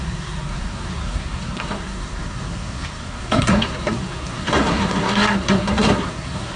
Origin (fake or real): fake